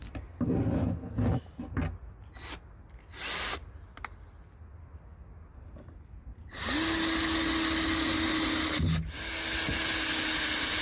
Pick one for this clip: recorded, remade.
recorded